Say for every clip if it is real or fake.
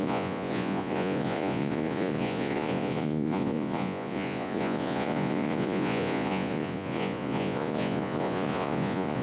fake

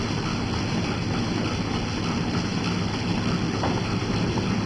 real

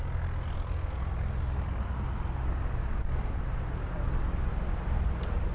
real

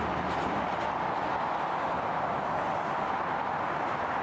real